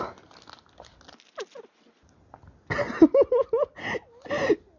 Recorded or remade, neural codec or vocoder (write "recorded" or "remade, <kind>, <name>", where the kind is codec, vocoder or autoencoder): recorded